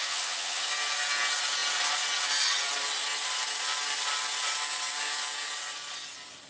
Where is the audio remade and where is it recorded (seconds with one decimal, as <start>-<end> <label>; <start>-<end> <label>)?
0.0-0.7 remade; 0.7-6.5 recorded